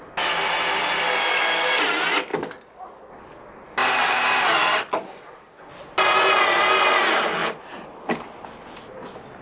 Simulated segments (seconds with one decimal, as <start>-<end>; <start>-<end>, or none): 1.3-1.8